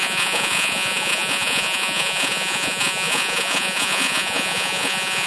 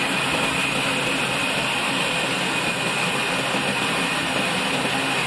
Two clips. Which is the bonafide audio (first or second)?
second